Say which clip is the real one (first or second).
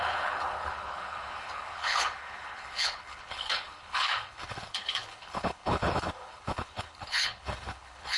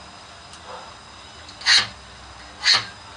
second